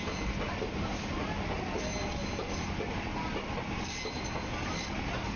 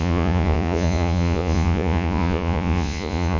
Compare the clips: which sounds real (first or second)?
first